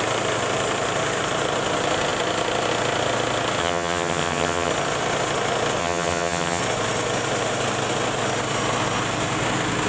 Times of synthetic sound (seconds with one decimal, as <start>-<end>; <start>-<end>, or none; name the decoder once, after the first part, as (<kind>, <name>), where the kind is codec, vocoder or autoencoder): 3.6-4.7 (vocoder, HiFi-GAN); 5.8-6.6